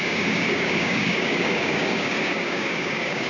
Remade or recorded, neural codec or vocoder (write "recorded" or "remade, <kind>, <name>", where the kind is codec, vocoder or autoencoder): remade, codec, DAC